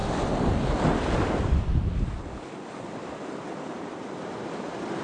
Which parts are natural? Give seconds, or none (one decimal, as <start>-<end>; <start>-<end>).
0.0-5.0